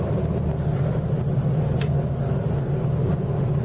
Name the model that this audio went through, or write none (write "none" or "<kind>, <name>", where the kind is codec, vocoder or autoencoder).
none